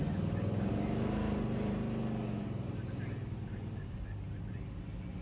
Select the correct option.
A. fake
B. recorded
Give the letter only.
B